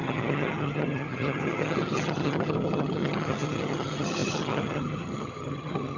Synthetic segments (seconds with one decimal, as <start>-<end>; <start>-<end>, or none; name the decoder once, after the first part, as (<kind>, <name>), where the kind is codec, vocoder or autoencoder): 0.0-6.0 (vocoder, HiFi-GAN)